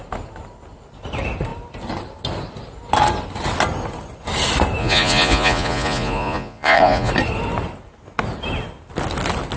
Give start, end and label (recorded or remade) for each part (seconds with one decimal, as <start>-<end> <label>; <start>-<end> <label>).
0.0-4.8 recorded; 4.8-7.1 remade; 7.1-9.6 recorded